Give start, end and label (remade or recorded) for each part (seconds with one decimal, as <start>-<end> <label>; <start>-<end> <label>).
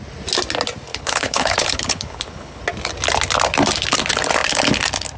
0.0-0.9 recorded; 0.9-2.6 remade; 2.6-5.2 recorded